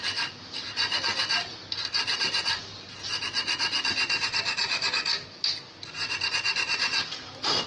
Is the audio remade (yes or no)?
no